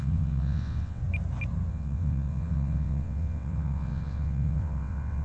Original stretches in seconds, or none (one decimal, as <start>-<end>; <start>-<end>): 1.0-1.7